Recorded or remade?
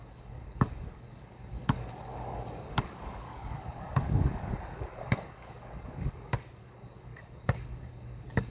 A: remade